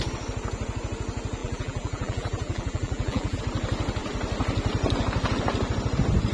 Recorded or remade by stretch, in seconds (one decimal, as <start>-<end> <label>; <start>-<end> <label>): 0.0-1.4 recorded; 1.4-3.4 remade; 3.4-6.3 recorded